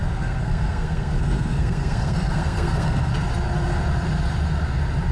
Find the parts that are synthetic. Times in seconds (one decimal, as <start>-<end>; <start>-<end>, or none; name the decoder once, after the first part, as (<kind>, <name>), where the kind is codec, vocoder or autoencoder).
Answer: 0.0-3.1 (codec, SNAC)